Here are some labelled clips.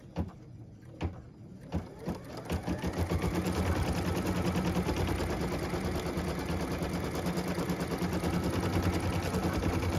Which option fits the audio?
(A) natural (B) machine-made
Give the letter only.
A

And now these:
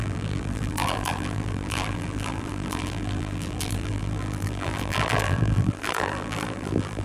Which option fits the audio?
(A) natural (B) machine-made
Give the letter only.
B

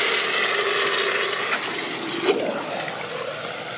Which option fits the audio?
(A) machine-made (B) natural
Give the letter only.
B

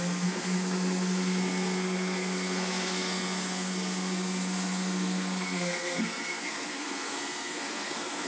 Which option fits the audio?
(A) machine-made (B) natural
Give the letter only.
A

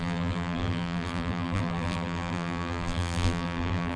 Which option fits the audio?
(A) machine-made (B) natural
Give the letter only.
A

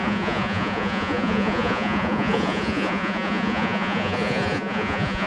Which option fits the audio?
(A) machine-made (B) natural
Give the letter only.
A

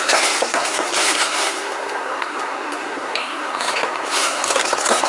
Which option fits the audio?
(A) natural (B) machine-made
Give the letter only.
B